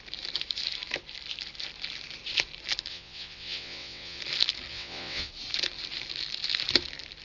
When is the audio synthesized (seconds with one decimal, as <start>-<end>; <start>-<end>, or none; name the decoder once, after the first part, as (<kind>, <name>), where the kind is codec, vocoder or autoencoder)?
2.9-4.2 (vocoder, WaveNeXt); 4.7-5.3